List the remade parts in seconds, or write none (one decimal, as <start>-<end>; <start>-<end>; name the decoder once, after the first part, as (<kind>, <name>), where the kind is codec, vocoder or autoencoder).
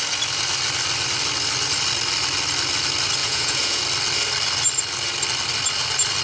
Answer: 3.2-3.8 (vocoder, Vocos)